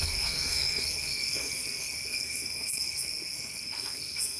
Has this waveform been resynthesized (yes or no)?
yes